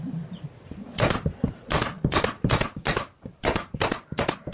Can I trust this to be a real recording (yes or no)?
no